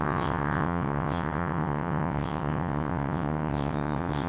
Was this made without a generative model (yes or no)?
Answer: no